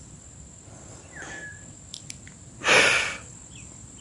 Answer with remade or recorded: recorded